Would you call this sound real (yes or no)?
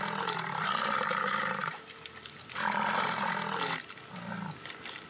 yes